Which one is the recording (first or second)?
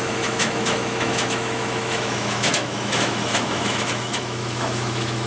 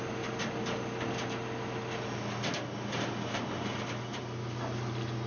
second